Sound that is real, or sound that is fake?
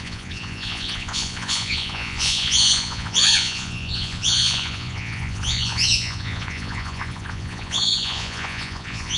fake